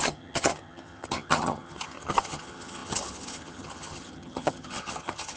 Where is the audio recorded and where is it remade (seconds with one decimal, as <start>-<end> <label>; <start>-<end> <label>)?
0.0-5.4 remade